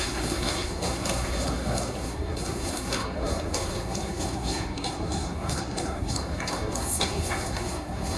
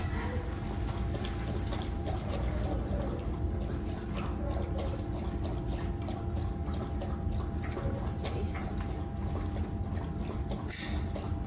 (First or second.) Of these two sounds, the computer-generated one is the first